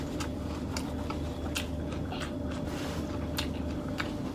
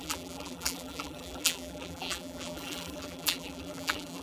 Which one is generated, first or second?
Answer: second